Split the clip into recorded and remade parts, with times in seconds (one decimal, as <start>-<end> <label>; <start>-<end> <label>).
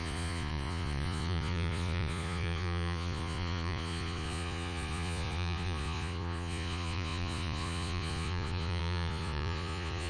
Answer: 0.0-10.1 remade